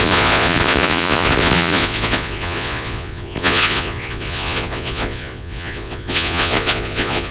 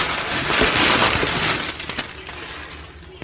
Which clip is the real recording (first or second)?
second